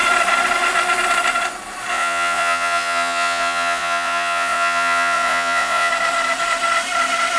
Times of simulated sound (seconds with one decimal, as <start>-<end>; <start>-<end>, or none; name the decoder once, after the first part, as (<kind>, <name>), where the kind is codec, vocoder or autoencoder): 1.9-5.9 (vocoder, Vocos)